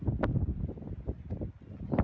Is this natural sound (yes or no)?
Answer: yes